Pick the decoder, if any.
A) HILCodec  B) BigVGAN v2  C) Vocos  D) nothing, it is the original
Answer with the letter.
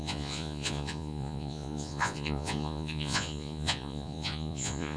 C